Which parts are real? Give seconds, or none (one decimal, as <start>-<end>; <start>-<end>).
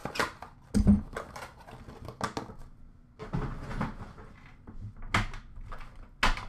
0.0-6.5